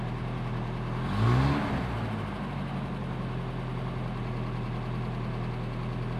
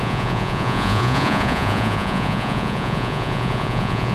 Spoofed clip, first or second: second